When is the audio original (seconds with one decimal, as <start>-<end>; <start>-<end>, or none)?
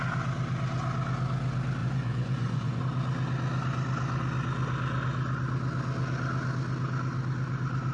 0.0-1.8; 2.8-7.9